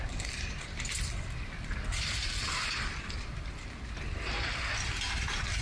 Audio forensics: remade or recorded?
recorded